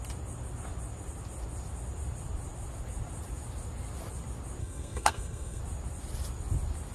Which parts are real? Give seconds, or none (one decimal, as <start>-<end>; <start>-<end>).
0.0-4.6; 5.6-6.9